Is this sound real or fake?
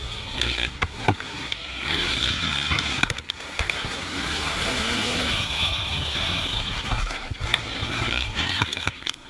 fake